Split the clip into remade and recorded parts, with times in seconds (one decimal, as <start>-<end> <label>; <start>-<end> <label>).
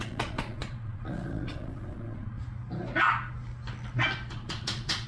0.0-2.4 remade; 2.4-4.3 recorded; 4.3-5.1 remade